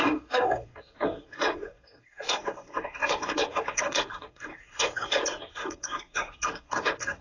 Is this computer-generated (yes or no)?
yes